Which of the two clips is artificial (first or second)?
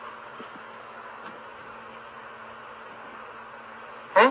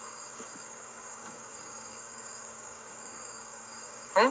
second